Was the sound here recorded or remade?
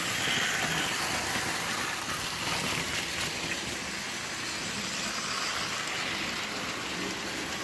recorded